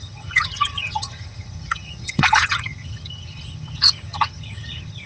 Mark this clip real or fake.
fake